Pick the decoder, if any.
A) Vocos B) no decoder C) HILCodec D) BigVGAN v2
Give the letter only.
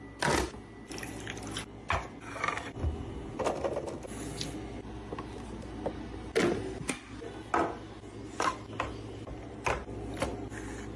B